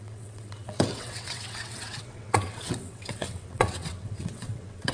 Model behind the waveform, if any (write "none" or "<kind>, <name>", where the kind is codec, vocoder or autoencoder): vocoder, WaveNeXt